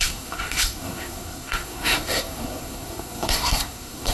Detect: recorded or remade remade